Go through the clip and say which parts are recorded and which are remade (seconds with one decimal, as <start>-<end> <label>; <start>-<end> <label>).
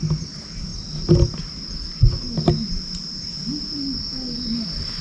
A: 0.0-5.0 recorded